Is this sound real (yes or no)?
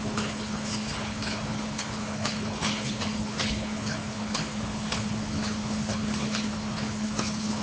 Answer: no